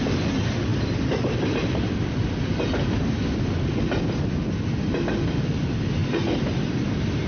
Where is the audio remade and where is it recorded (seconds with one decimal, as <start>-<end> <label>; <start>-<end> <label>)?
0.0-0.7 recorded; 0.7-4.0 remade; 4.0-6.0 recorded; 6.0-6.5 remade; 6.5-7.3 recorded